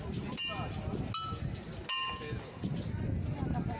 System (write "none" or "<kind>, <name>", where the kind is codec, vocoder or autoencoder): none